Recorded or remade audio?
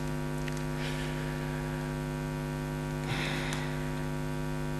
recorded